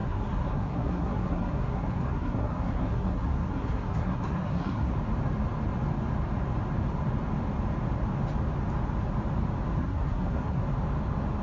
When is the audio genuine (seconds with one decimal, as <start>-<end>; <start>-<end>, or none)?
4.9-9.8; 10.6-11.4